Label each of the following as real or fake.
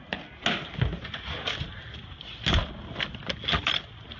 real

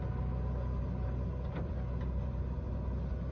real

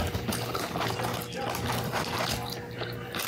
real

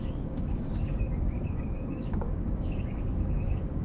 fake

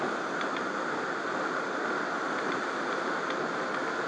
real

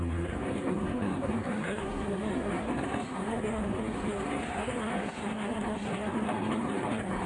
fake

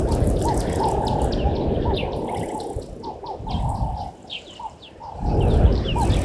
real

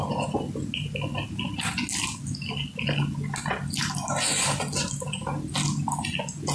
real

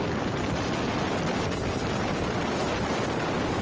real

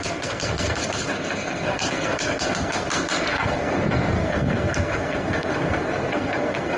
fake